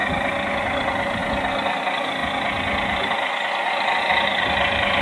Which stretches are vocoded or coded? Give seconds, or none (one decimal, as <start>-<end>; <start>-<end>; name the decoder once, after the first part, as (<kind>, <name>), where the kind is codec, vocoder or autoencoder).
none